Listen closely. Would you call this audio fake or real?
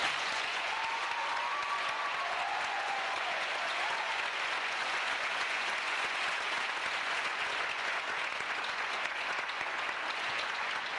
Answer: fake